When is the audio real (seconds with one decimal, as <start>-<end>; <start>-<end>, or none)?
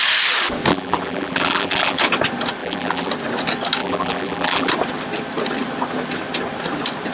0.0-0.7; 2.0-2.6; 3.1-3.8; 4.7-7.1